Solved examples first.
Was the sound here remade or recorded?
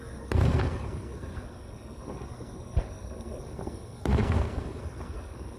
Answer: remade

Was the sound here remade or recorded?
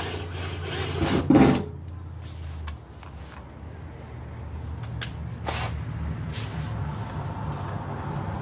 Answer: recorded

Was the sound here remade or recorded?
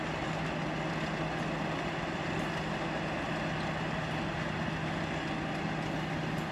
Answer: recorded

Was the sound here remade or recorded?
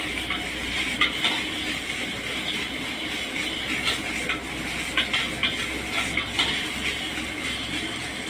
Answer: recorded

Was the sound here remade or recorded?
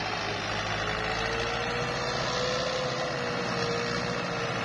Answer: recorded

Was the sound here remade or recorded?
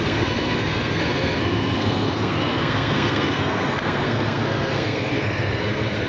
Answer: remade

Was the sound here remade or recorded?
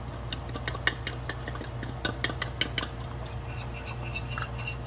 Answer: recorded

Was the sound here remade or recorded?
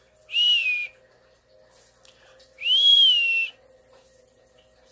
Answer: recorded